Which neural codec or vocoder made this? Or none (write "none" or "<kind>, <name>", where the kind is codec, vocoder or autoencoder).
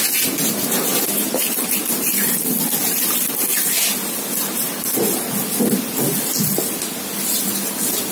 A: none